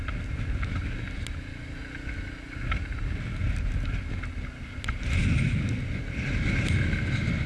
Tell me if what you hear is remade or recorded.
recorded